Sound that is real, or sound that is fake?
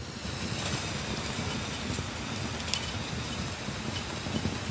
real